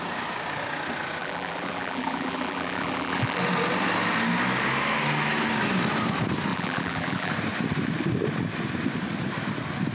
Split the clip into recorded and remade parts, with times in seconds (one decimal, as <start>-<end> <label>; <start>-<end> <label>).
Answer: 0.0-1.2 recorded; 1.2-3.4 remade; 3.4-6.5 recorded; 6.5-7.3 remade; 7.3-9.9 recorded